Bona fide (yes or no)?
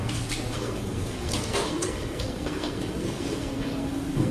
no